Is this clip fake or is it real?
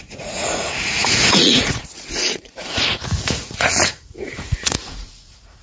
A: fake